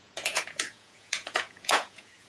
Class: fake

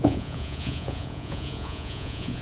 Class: fake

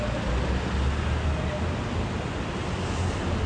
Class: real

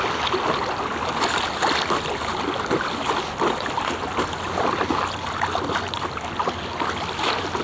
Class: real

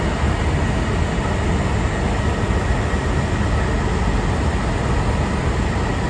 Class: real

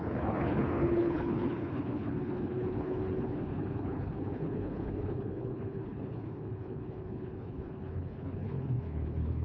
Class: fake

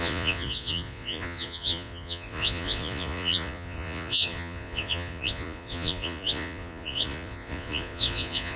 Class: fake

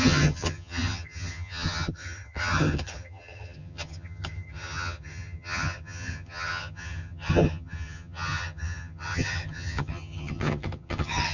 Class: fake